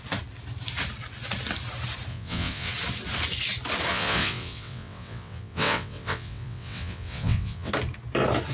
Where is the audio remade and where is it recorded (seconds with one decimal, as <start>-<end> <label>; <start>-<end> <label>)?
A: 0.0-2.1 recorded; 2.1-2.7 remade; 2.7-3.9 recorded; 3.9-7.7 remade; 7.7-8.5 recorded